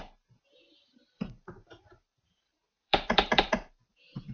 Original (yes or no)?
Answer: no